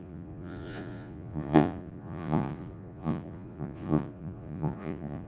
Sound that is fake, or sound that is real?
fake